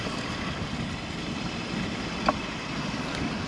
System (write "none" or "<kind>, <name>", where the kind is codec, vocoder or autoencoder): none